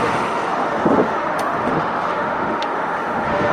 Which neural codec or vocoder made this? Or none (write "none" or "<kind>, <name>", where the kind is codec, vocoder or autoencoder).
autoencoder, DAC-VAE